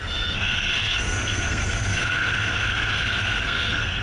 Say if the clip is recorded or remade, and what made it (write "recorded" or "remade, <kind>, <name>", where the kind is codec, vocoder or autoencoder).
remade, codec, SNAC